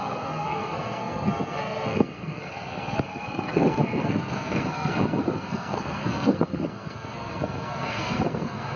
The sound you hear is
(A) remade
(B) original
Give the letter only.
A